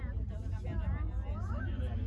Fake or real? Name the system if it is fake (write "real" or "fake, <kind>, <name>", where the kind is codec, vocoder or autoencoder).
real